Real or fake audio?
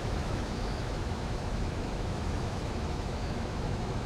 fake